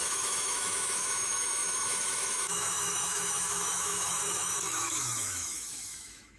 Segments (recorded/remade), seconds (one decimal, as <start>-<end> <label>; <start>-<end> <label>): 0.0-6.4 remade